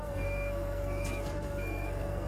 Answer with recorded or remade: remade